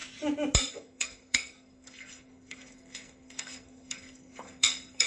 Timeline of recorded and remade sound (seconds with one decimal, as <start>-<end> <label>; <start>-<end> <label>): 0.0-0.7 recorded; 0.7-5.1 remade